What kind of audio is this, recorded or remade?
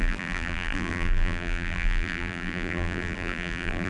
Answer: remade